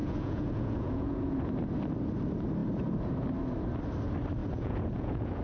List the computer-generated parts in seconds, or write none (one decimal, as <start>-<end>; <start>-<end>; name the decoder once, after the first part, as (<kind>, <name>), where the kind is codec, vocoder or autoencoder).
0.0-1.5 (vocoder, Vocos); 4.4-5.4

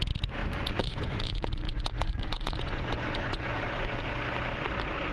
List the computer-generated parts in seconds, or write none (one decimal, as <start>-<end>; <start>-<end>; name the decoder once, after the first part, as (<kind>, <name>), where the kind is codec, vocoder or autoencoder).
0.4-3.5 (vocoder, Vocos)

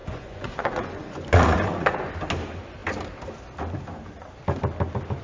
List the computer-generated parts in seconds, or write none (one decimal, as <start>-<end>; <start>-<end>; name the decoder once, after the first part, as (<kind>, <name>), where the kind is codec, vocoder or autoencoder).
0.0-2.1 (vocoder, Vocos)

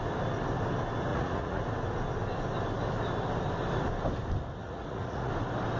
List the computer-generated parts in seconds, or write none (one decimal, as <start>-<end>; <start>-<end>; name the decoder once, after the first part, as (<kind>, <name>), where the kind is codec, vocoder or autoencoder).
1.1-1.6 (vocoder, Vocos); 4.6-5.3